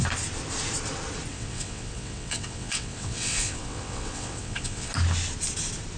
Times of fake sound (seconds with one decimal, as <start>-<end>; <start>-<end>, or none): 1.3-4.9